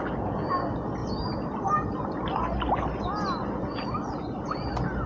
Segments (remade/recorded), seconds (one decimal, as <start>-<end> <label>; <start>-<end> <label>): 0.0-5.1 recorded

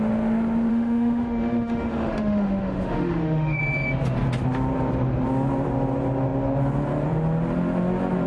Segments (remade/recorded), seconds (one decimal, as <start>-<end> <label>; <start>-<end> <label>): 0.0-0.7 recorded; 0.7-3.6 remade; 3.6-8.3 recorded

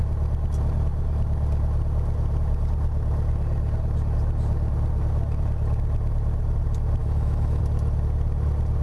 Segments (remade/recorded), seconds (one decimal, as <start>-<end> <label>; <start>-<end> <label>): 0.0-7.0 recorded; 7.0-7.6 remade; 7.6-8.8 recorded

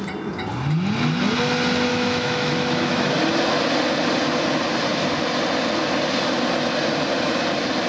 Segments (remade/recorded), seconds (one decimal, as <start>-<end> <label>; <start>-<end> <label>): 0.0-1.9 recorded; 1.9-3.1 remade; 3.1-7.9 recorded

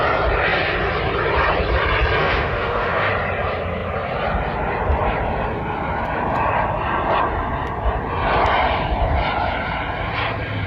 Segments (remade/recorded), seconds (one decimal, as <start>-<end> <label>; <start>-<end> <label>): 0.0-2.2 recorded; 2.2-3.1 remade; 3.1-10.7 recorded